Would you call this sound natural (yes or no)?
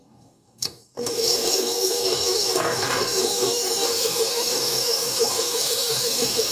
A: no